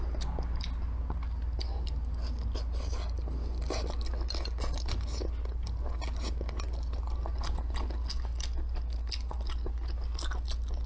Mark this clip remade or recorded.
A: recorded